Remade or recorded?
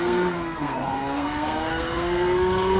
remade